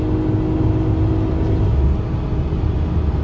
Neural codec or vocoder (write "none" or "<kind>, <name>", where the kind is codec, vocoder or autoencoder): none